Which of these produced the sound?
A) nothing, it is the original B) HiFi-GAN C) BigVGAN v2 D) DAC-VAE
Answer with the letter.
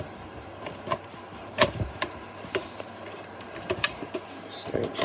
C